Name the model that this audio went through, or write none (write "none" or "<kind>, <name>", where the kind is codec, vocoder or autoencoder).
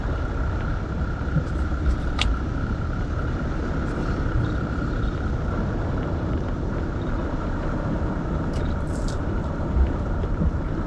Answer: vocoder, BigVGAN v2